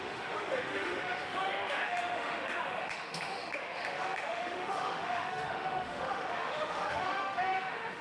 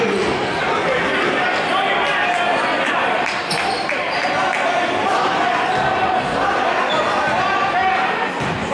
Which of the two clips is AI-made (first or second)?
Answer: first